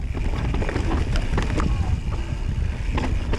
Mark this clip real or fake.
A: real